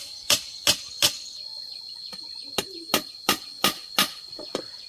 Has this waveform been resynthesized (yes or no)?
no